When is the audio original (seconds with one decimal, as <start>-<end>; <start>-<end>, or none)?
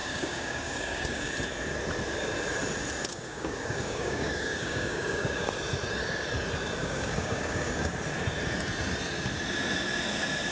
1.3-3.1; 5.5-6.8; 7.9-10.5